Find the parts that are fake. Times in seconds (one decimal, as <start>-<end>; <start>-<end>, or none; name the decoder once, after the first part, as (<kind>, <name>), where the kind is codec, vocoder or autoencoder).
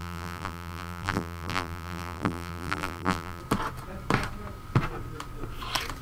0.0-3.4 (vocoder, BigVGAN v2)